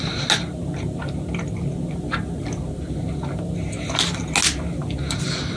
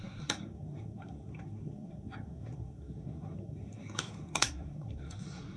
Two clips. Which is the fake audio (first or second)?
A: second